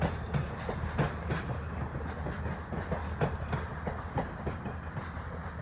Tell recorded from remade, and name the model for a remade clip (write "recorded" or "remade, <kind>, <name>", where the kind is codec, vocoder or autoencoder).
recorded